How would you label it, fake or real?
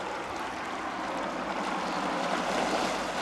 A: real